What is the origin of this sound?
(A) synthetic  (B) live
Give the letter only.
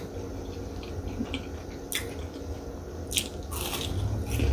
B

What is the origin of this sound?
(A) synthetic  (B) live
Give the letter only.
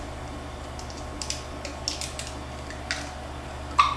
B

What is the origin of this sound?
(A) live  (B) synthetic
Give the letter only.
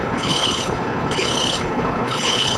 B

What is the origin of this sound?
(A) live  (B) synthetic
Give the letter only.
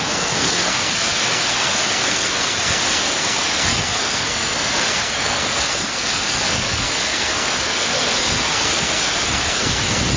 B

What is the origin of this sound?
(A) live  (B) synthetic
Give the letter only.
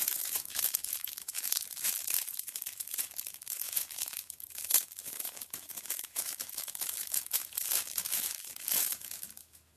B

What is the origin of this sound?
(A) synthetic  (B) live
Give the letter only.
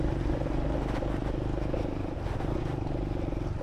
B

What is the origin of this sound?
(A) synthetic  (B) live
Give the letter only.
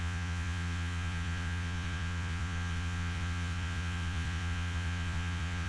A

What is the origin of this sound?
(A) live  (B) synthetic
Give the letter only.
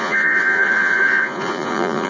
B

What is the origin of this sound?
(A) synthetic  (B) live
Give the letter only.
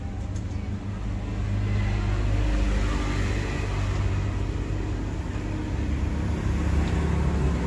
B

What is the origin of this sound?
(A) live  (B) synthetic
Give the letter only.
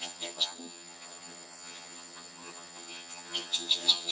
B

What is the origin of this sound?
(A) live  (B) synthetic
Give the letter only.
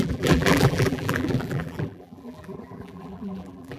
B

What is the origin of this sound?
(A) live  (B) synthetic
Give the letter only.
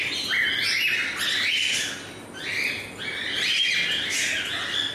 A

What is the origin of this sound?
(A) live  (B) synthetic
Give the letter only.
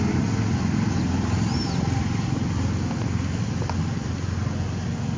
A